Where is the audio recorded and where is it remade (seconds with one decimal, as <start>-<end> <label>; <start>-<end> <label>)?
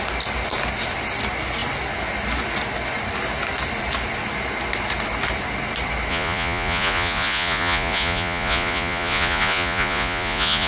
0.0-6.1 recorded; 6.1-10.7 remade